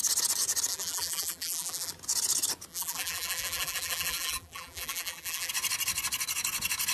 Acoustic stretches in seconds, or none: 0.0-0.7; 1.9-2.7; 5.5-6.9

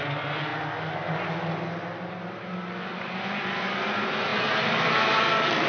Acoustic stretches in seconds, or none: 0.5-2.7

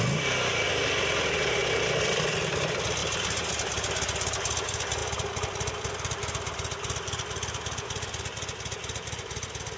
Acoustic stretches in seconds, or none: 0.0-3.0; 3.5-9.8